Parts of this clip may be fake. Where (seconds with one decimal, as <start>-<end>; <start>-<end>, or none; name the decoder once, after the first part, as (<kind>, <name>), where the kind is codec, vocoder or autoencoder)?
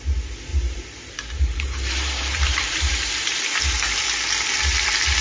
0.5-3.6 (vocoder, BigVGAN v2)